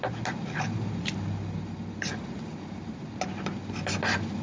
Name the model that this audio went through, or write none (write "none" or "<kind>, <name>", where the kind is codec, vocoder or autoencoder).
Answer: none